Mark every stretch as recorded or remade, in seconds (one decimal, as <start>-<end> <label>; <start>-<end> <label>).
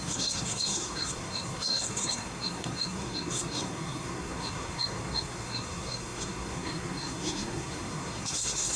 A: 0.0-8.8 remade